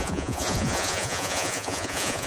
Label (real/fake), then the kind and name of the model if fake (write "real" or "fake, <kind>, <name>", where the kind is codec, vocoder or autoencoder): fake, vocoder, Vocos